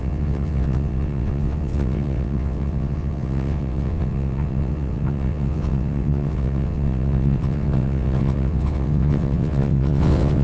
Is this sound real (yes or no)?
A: no